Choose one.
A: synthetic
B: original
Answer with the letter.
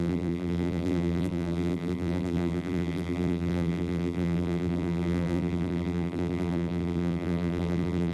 A